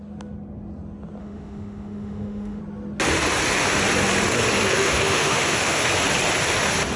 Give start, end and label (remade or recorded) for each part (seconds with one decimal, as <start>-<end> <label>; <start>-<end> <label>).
0.0-1.2 recorded; 1.2-2.6 remade; 2.6-4.7 recorded; 4.7-5.9 remade; 5.9-7.0 recorded